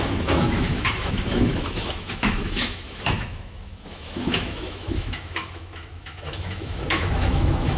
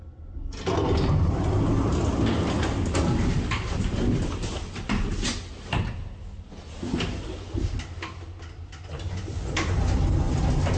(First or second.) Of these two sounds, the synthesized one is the first